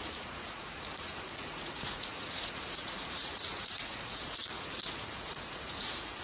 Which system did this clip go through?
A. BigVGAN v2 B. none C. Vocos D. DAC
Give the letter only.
C